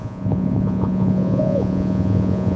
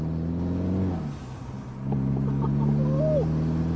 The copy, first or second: first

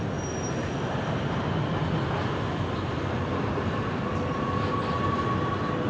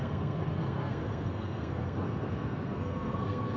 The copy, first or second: second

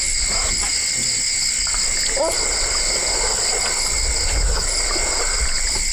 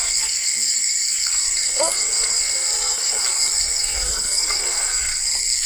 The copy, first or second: second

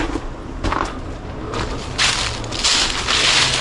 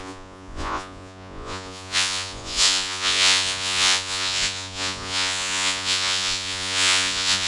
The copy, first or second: second